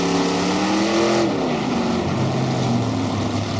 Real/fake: real